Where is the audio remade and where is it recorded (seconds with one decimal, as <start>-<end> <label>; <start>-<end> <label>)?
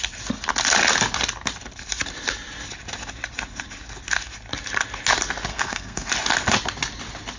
0.0-5.5 recorded; 5.5-6.1 remade; 6.1-7.4 recorded